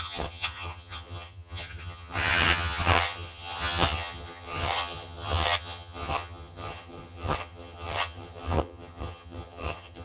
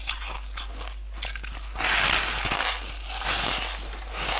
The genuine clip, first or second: second